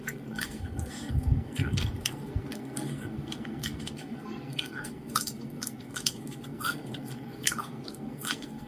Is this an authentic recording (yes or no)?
no